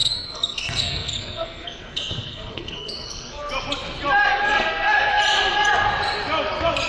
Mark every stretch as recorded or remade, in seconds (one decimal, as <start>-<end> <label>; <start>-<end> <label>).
0.0-3.5 remade; 3.5-4.3 recorded; 4.3-5.2 remade; 5.2-6.9 recorded